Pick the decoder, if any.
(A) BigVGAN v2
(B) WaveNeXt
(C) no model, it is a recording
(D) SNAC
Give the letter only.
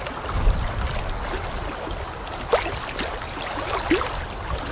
C